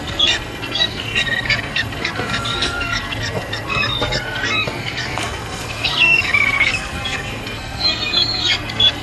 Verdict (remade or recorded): remade